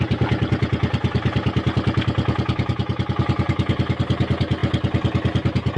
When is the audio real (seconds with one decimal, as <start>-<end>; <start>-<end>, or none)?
0.0-5.8